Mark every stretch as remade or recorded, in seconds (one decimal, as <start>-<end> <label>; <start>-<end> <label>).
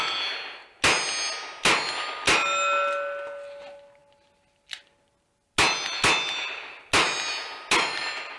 0.0-8.4 recorded